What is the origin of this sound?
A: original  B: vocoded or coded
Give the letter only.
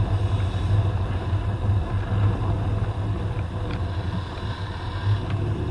A